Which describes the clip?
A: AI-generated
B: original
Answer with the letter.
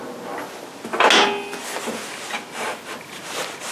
B